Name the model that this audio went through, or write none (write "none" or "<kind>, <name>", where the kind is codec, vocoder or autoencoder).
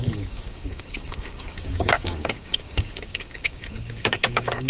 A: codec, DAC